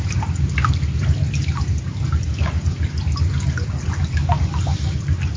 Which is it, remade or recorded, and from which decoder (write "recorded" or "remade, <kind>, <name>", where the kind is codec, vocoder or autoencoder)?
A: recorded